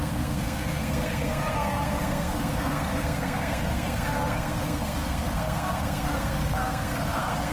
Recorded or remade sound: remade